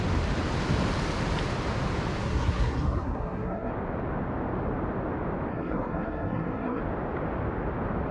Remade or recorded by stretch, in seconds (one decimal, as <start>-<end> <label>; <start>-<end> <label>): 0.0-2.2 recorded; 2.2-3.7 remade; 3.7-5.5 recorded; 5.5-6.8 remade; 6.8-8.1 recorded